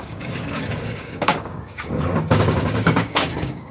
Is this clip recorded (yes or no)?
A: no